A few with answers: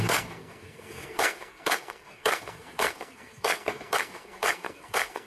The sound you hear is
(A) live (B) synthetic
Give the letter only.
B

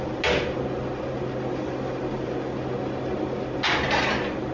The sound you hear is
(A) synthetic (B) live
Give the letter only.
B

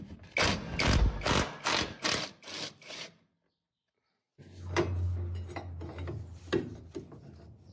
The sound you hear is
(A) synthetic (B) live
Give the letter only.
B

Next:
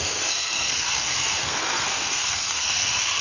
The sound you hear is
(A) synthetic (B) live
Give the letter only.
A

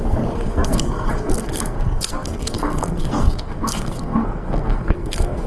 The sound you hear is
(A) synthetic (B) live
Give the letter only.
A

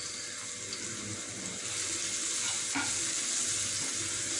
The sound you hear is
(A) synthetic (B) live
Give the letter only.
B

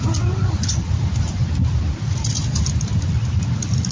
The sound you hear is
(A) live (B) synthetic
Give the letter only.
A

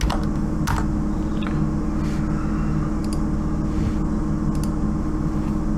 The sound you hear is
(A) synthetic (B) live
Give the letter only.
B